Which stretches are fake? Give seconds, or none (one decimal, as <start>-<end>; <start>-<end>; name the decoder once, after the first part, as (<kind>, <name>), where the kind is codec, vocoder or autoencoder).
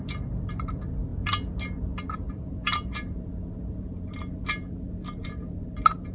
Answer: 0.0-1.1 (vocoder, BigVGAN v2); 2.1-4.1; 5.2-6.1